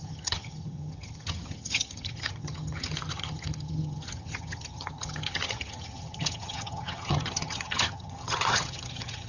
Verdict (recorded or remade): remade